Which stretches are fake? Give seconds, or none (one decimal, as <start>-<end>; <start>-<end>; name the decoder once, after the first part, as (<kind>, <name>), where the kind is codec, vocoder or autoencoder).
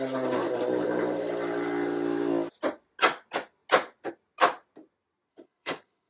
5.3-6.1 (codec, HILCodec)